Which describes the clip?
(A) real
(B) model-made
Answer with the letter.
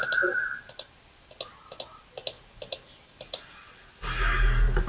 A